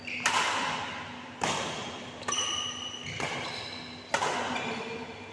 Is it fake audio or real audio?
real